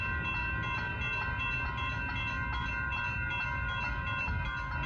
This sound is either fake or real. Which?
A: real